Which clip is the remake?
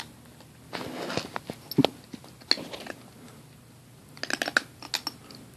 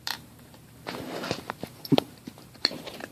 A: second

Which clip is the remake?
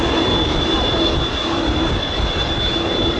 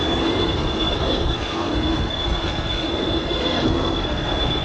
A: second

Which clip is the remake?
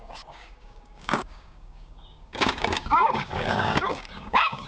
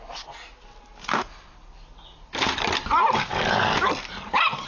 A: first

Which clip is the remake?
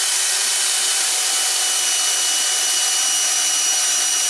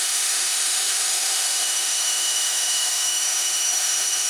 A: second